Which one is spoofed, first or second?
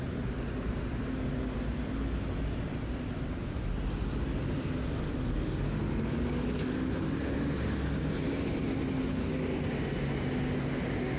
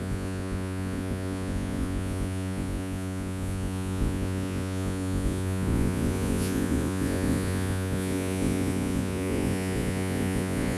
second